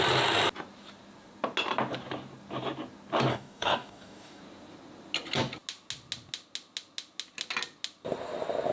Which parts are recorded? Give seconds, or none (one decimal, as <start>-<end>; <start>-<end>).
0.0-3.3; 4.4-8.7